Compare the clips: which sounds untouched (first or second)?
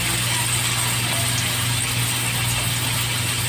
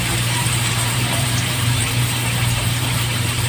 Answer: first